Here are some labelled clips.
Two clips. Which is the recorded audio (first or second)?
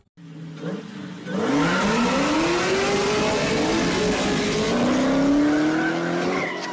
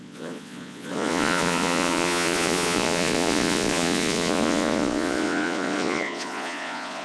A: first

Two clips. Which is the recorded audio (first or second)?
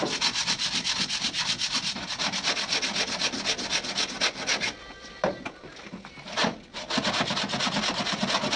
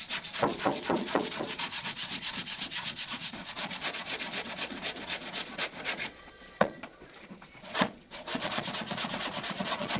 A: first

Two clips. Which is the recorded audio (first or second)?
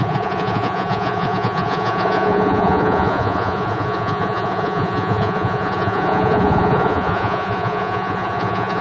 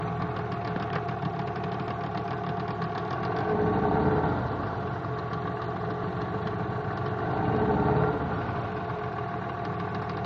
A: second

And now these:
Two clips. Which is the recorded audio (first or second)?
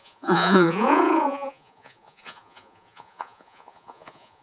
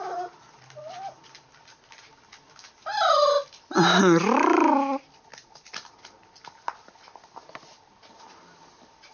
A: second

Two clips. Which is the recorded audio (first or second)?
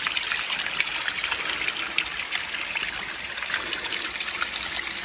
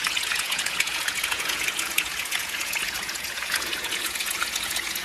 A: first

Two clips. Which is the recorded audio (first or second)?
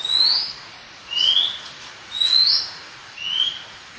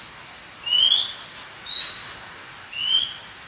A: second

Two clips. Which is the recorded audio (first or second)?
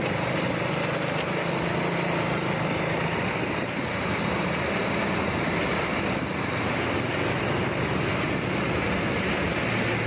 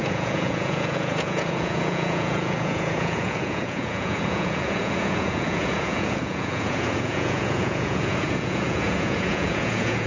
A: first